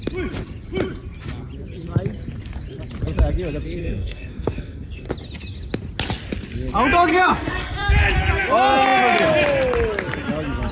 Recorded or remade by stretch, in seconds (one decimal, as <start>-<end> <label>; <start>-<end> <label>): 0.0-3.8 recorded; 3.8-5.1 remade; 5.1-7.1 recorded; 7.1-7.9 remade; 7.9-10.7 recorded

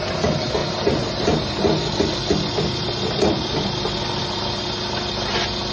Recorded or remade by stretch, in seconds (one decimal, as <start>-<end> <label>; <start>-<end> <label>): 0.0-5.7 recorded

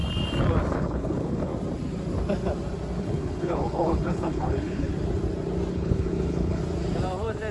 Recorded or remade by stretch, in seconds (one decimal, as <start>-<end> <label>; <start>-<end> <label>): 0.0-0.7 recorded; 0.7-1.5 remade; 1.5-3.0 recorded; 3.0-4.9 remade; 4.9-5.7 recorded; 5.7-6.6 remade; 6.6-7.5 recorded

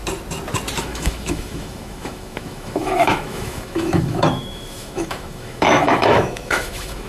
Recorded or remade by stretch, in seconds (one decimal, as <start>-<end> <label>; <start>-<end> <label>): 0.0-0.8 recorded; 0.8-7.1 remade

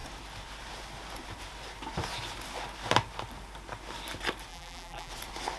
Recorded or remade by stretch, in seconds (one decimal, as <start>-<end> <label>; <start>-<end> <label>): 0.0-4.5 recorded; 4.5-5.1 remade; 5.1-5.6 recorded